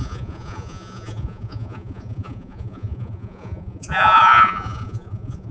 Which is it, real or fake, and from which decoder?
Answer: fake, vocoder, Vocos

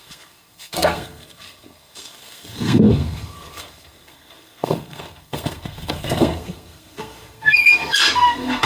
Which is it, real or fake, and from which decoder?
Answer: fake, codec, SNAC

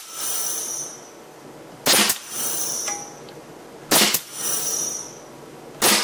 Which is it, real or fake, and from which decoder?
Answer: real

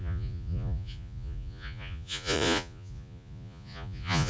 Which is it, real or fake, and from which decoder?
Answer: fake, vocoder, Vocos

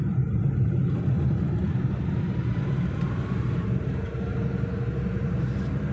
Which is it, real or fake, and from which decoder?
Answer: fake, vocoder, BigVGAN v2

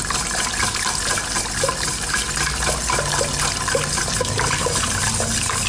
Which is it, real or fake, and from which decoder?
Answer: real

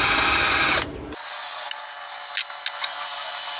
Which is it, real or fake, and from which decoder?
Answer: real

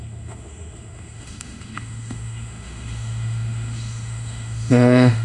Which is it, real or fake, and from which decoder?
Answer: fake, autoencoder, DAC-VAE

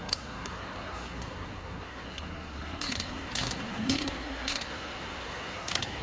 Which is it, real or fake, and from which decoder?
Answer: fake, codec, SNAC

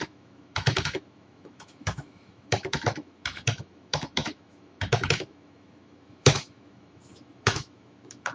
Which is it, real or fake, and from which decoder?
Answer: fake, autoencoder, DAC-VAE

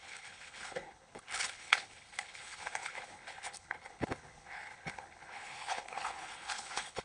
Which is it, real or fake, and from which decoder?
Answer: fake, codec, HILCodec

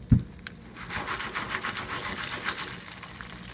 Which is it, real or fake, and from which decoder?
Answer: real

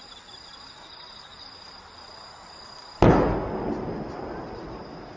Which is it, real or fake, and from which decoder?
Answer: real